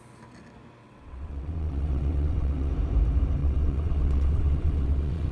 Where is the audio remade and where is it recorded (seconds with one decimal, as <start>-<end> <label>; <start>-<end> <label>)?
0.0-0.8 recorded; 0.8-2.7 remade; 2.7-3.4 recorded; 3.4-5.3 remade